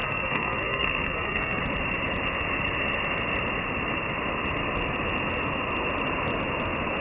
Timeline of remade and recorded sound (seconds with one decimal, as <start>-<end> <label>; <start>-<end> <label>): 0.0-1.6 remade; 1.6-7.0 recorded